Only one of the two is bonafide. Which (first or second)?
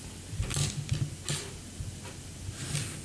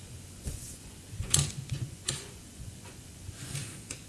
first